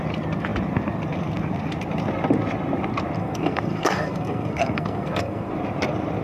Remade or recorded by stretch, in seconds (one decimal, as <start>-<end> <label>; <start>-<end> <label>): 0.0-3.2 recorded; 3.2-5.5 remade; 5.5-6.2 recorded